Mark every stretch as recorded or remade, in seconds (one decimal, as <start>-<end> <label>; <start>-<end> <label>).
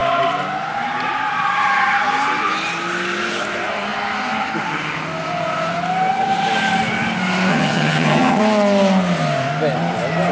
0.0-7.5 recorded; 7.5-8.4 remade; 8.4-10.3 recorded